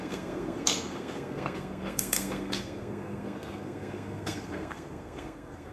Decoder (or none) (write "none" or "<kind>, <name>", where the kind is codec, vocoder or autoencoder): codec, SNAC